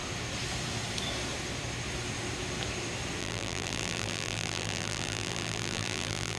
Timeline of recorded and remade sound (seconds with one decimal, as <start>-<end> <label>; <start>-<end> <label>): 0.0-3.2 recorded; 3.2-6.4 remade